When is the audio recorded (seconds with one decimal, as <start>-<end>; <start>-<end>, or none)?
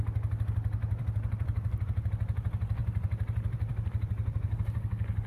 0.0-0.8; 2.1-2.8; 4.6-5.3